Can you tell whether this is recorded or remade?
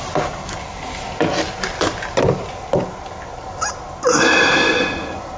recorded